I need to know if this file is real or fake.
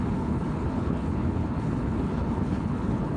fake